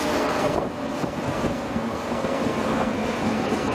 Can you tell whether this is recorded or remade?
remade